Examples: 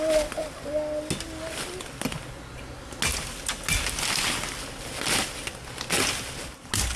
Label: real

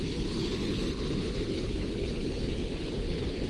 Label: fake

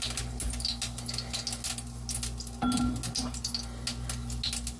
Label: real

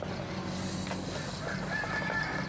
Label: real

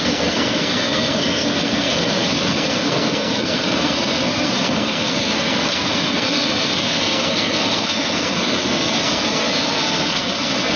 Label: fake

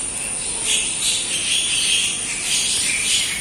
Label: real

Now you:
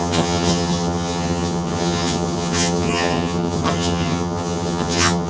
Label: fake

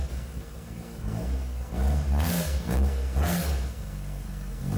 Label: fake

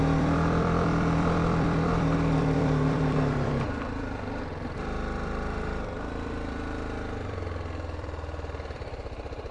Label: fake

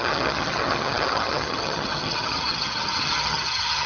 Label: fake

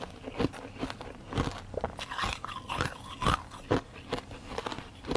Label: real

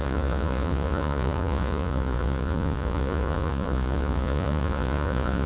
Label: fake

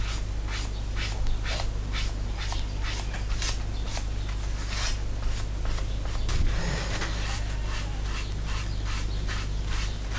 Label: real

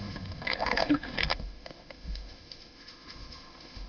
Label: fake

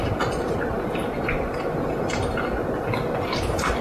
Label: real